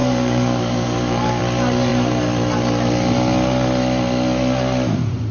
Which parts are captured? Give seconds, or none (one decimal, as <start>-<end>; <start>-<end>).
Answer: 1.4-5.3